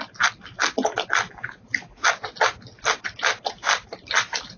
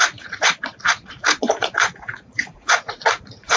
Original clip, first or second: first